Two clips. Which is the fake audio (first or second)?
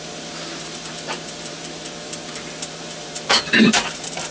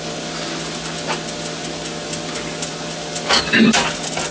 first